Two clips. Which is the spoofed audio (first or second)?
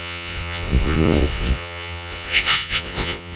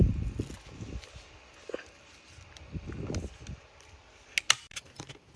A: first